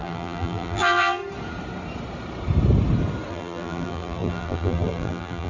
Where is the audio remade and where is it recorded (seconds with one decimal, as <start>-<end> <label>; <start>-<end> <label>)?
0.0-1.2 remade; 1.2-3.3 recorded; 3.3-5.5 remade